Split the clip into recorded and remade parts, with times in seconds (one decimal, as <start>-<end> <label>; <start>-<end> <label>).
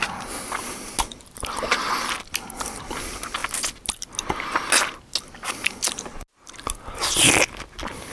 0.0-8.1 recorded